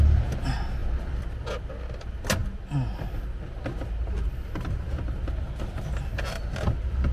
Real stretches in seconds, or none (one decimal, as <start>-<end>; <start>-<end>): 0.0-7.1